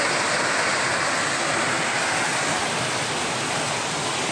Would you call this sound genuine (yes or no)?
yes